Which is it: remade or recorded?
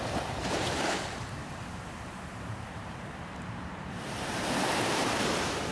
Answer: remade